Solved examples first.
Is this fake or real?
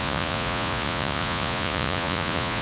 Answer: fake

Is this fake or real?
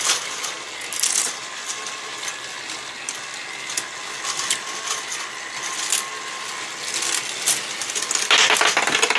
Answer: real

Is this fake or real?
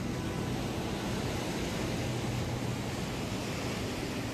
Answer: real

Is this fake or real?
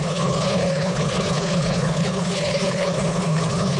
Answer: fake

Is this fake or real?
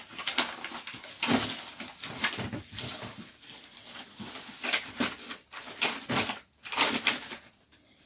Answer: real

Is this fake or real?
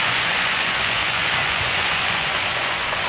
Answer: fake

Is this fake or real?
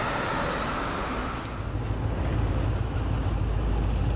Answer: real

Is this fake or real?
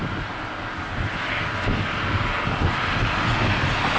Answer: real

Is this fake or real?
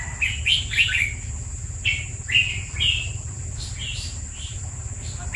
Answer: real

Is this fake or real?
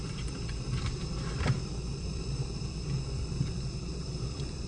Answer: fake